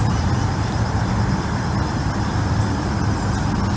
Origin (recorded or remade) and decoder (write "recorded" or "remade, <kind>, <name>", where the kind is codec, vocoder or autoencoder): recorded